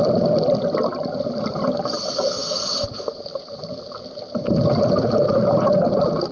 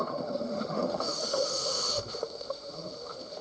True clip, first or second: first